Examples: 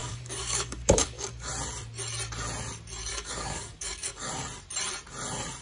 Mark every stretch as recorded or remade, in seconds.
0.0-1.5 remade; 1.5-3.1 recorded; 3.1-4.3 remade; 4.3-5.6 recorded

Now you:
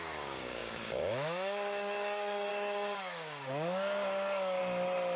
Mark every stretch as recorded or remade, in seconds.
0.0-4.6 remade; 4.6-5.2 recorded